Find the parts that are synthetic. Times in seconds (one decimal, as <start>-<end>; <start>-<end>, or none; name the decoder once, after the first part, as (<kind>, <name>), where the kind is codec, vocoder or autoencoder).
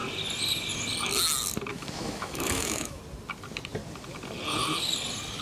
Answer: 1.7-3.0 (autoencoder, DAC-VAE)